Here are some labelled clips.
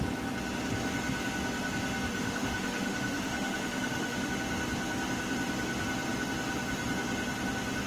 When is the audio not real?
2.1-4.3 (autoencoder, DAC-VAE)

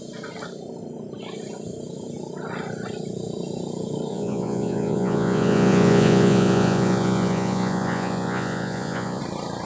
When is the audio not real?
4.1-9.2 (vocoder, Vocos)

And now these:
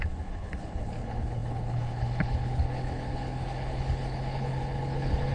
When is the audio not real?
0.0-5.3 (codec, HILCodec)